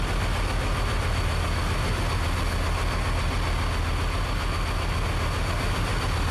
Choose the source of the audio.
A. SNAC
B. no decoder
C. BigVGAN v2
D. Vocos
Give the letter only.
B